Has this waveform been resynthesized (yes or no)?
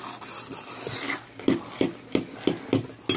no